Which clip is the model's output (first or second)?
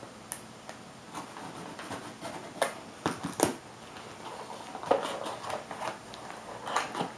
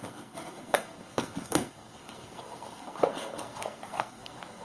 second